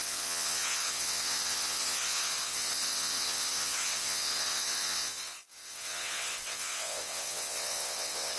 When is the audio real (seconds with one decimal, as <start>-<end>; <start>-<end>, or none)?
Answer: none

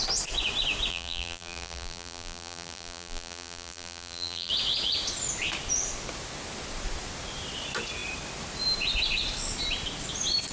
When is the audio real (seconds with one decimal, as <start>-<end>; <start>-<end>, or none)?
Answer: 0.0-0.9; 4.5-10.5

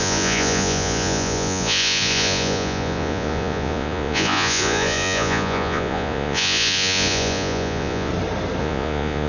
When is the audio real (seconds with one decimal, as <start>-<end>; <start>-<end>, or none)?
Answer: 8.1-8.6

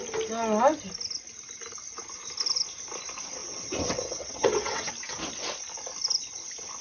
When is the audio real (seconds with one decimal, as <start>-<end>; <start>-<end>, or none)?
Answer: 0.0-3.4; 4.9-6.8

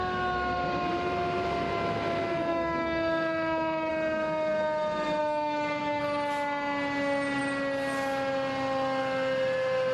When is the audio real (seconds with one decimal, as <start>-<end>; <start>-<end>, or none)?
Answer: 0.0-2.5; 3.9-5.2; 6.0-9.9

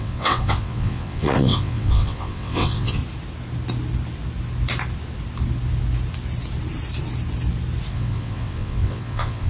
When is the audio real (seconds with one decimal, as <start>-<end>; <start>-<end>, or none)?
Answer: 3.0-7.9